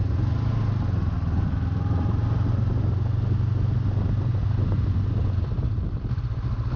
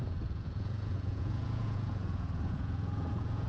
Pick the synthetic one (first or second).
second